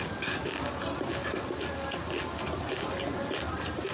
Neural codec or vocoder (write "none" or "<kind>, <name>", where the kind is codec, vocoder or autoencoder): none